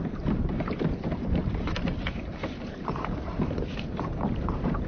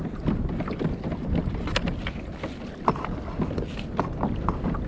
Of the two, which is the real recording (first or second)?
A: second